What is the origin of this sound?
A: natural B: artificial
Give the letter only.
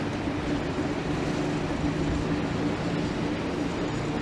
A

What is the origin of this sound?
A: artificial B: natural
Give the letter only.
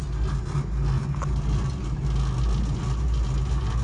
B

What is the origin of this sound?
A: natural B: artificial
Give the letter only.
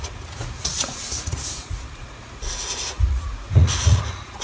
B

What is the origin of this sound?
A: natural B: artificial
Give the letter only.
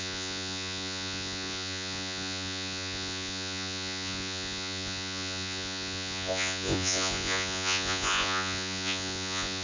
B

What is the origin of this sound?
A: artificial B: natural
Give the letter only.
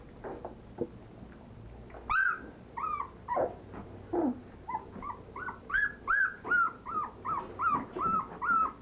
B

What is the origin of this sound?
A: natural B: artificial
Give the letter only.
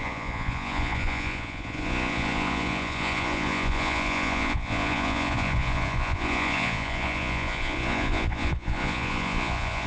B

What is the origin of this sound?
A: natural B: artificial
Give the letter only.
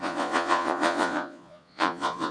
B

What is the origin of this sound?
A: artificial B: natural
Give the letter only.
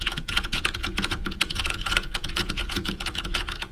A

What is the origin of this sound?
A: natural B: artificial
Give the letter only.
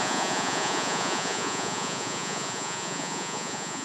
B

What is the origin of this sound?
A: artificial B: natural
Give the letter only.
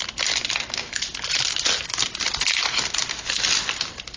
B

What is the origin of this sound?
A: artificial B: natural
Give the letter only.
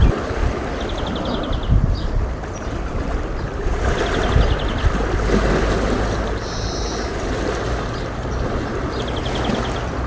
B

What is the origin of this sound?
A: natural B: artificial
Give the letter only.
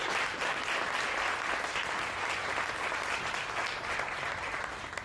A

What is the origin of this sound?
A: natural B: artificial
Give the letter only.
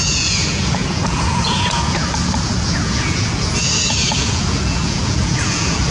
B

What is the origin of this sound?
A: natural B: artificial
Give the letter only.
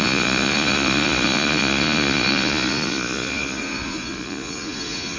B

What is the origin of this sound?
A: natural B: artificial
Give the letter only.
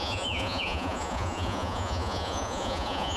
B